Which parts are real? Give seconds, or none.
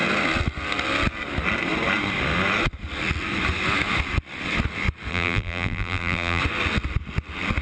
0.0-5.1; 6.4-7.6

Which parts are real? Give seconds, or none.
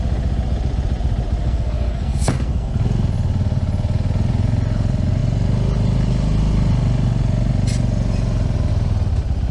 0.0-1.4; 2.7-9.5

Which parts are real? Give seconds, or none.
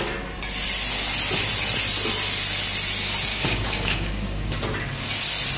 0.0-3.3; 4.5-5.6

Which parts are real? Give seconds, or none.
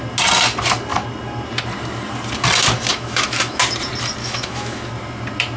0.0-2.9; 3.6-4.2; 4.9-5.6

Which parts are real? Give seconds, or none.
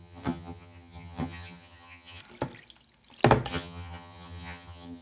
2.2-3.5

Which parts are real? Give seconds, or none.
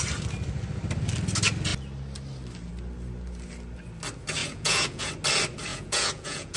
0.0-4.4; 5.1-5.7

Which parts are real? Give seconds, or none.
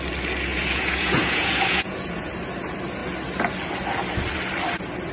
0.0-0.5; 2.3-5.1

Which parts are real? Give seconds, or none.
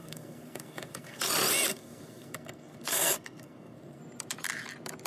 1.2-1.7; 4.0-5.1